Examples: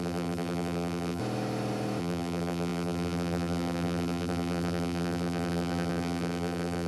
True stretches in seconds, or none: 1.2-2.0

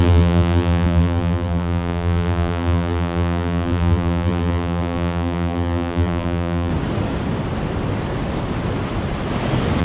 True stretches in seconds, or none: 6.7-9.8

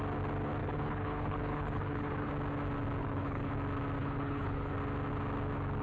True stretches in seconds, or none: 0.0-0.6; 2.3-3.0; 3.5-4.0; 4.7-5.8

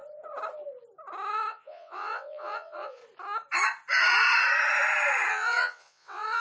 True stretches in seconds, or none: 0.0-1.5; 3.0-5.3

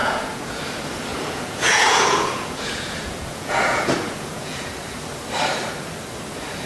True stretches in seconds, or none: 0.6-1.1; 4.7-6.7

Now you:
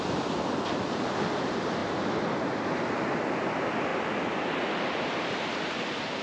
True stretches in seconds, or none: 0.0-6.2

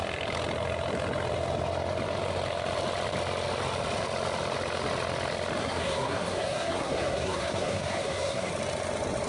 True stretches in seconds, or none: 0.0-5.6; 8.5-9.3

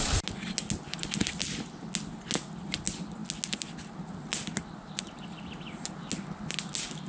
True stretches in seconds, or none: 0.0-7.1